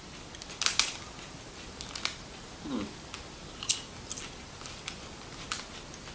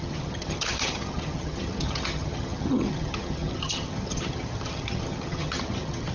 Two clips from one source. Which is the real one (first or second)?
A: first